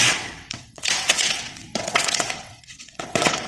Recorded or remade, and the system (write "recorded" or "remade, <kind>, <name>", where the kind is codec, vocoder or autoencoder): remade, vocoder, WaveNeXt